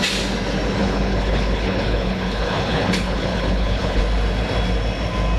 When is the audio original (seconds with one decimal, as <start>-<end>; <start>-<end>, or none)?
0.0-0.8; 4.0-5.4